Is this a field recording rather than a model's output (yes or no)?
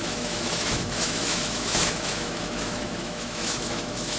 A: no